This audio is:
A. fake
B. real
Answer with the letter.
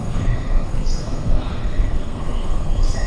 A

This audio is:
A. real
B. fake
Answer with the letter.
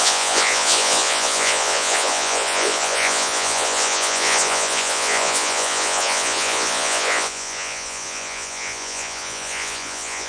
B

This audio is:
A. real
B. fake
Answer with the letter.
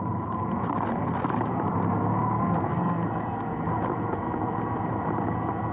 A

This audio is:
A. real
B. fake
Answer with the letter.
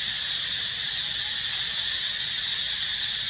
A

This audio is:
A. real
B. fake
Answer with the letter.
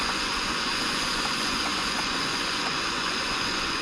B